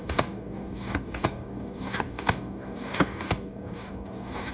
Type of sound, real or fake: fake